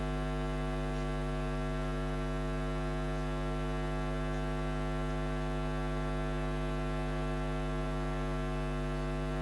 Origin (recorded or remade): recorded